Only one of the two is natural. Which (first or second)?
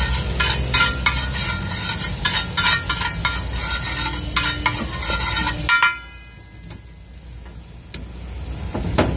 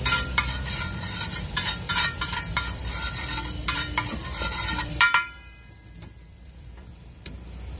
first